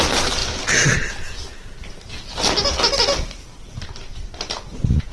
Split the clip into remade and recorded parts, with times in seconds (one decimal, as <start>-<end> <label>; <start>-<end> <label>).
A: 0.0-5.1 recorded